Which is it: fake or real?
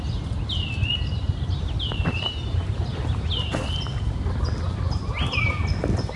real